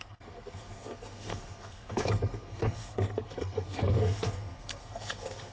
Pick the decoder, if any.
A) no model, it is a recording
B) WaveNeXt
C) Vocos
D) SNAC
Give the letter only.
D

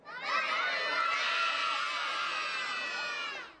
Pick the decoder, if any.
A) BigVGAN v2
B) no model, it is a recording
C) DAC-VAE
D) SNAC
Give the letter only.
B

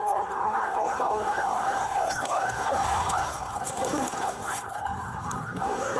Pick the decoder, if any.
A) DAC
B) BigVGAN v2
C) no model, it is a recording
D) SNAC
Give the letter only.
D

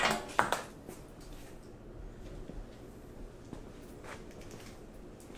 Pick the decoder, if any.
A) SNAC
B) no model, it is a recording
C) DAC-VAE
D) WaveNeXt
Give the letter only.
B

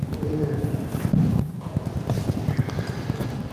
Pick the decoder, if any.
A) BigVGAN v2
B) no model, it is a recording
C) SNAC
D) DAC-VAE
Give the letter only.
B